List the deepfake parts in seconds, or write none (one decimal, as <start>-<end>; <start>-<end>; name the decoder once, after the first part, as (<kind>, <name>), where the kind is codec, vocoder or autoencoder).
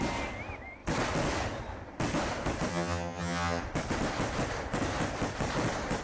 2.7-3.6 (vocoder, HiFi-GAN)